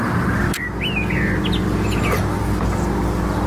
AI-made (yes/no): no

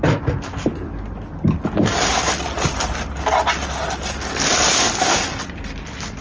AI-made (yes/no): no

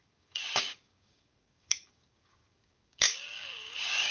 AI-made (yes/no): yes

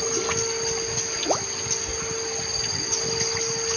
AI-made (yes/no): no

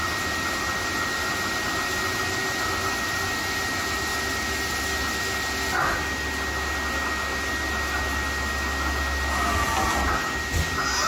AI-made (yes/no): no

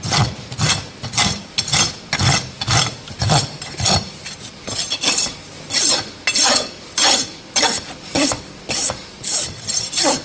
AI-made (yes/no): no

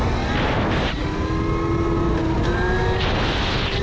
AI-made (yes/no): no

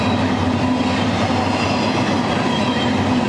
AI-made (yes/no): no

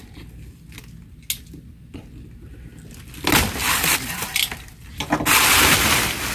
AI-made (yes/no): no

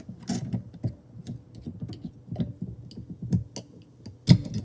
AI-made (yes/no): no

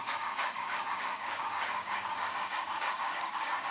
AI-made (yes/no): yes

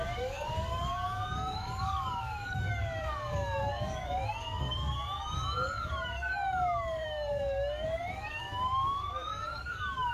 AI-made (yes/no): yes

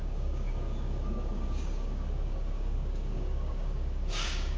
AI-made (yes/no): yes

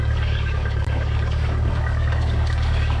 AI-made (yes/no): yes